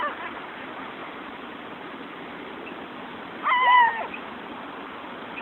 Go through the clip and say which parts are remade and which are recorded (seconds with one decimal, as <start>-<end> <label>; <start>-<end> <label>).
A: 0.0-5.4 recorded